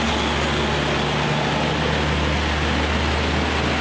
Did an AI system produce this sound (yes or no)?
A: no